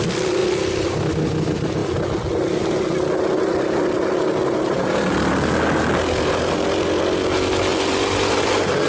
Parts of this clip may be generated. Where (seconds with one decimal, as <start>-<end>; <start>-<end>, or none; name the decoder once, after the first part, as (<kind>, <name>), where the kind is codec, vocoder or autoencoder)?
0.4-1.0 (vocoder, BigVGAN v2); 7.7-8.5